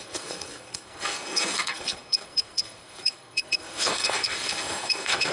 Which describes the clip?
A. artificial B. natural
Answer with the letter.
A